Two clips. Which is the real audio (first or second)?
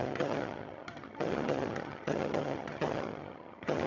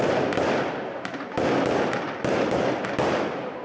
second